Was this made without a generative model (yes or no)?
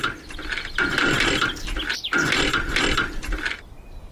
yes